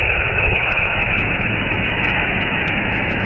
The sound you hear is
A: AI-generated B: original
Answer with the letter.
A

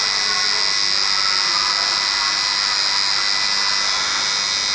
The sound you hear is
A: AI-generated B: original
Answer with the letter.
B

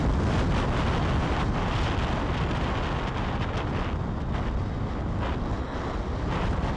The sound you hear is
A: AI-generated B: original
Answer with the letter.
B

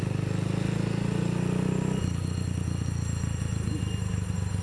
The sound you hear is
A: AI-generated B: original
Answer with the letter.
B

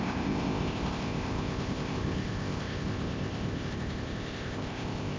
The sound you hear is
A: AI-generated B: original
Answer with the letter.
A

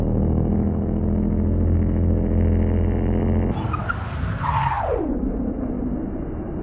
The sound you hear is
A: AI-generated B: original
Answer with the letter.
B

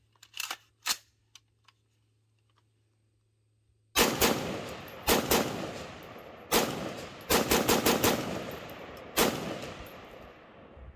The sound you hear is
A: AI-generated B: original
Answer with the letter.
B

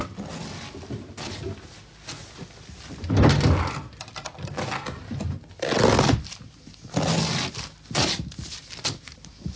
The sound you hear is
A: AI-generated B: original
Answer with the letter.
B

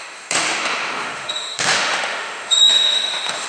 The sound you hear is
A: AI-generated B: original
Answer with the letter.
A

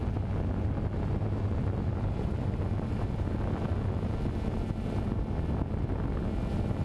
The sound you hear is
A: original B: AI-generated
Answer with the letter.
A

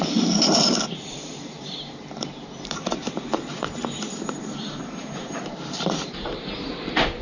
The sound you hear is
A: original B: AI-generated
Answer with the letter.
B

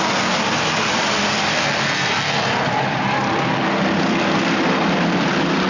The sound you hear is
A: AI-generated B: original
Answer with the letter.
A